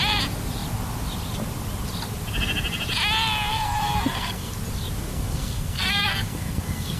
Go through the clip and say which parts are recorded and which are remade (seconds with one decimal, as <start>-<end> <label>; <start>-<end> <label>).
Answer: 0.0-3.5 recorded; 3.5-4.5 remade; 4.5-5.1 recorded; 5.1-7.0 remade